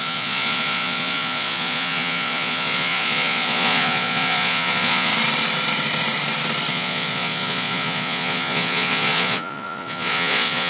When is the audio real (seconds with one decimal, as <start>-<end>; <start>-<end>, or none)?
5.1-6.7